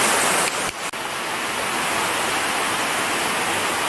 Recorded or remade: recorded